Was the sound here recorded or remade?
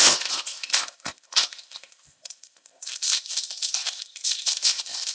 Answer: remade